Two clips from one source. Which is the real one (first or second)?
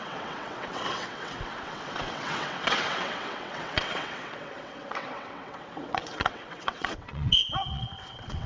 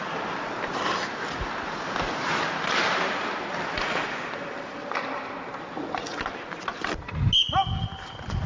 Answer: second